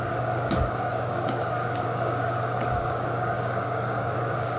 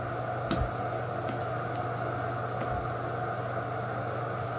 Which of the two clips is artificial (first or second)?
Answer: first